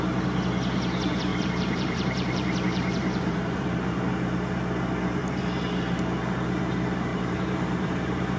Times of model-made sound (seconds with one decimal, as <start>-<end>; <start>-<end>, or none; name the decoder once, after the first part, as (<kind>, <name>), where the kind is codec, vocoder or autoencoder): 1.3-4.0 (vocoder, BigVGAN v2); 5.2-6.2; 7.1-8.4